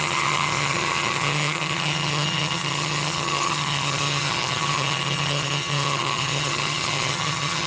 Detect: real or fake fake